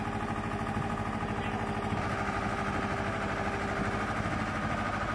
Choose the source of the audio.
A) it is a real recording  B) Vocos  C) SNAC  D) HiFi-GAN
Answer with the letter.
A